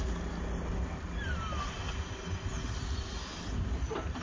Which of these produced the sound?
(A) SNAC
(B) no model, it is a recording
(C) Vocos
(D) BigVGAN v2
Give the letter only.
B